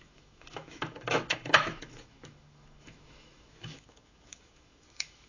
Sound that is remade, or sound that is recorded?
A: remade